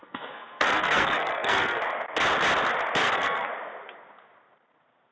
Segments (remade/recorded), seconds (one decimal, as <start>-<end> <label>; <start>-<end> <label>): 0.0-1.8 remade; 1.8-3.0 recorded; 3.0-3.5 remade; 3.5-5.1 recorded

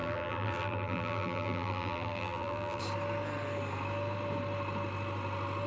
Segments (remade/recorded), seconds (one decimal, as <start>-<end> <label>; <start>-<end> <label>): 0.0-2.8 remade; 2.8-5.7 recorded